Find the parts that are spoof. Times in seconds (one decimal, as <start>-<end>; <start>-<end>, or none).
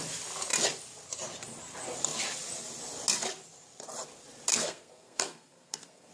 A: 4.5-6.1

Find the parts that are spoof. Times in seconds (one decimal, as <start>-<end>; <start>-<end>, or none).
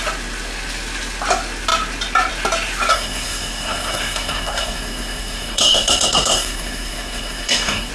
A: 2.9-7.9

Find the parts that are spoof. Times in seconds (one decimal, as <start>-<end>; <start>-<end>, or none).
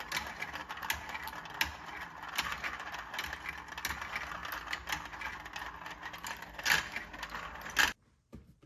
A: none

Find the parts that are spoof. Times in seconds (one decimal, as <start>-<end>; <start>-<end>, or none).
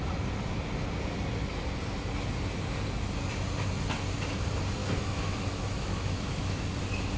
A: 4.8-6.7